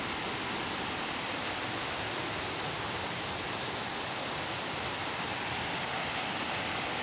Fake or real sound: real